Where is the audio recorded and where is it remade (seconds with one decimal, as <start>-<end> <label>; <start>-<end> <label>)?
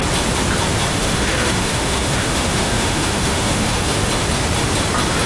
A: 0.0-0.9 recorded; 0.9-4.1 remade; 4.1-5.3 recorded